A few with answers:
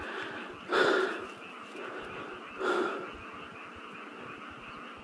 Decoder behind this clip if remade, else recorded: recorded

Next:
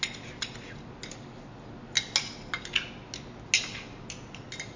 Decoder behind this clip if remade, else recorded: recorded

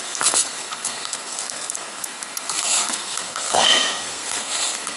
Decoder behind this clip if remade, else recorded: remade, codec, SNAC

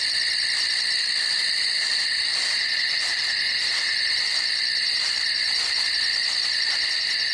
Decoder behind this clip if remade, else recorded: recorded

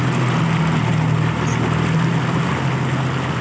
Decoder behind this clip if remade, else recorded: recorded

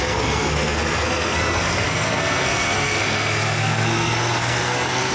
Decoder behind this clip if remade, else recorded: remade, codec, SNAC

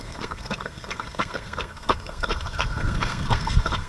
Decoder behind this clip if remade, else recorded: remade, codec, SNAC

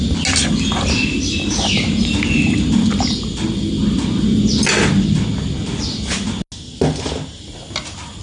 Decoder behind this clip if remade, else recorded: recorded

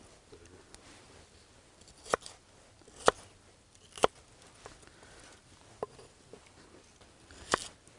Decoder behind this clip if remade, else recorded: recorded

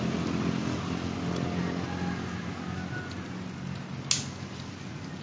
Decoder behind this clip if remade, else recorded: recorded